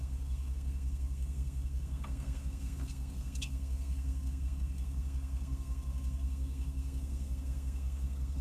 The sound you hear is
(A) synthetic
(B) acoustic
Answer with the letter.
A